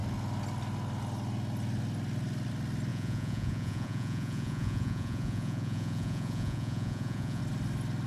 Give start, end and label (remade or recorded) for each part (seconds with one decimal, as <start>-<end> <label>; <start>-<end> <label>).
0.0-2.9 recorded; 2.9-7.4 remade; 7.4-8.1 recorded